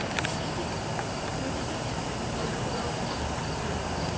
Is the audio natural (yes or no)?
yes